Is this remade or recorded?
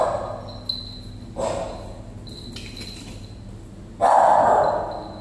recorded